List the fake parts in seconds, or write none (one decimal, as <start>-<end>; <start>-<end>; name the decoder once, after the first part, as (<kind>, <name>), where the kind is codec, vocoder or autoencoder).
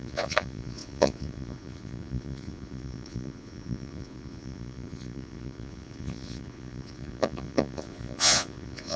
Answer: 0.0-9.0 (vocoder, Vocos)